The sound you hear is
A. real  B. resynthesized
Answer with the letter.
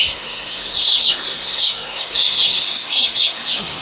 B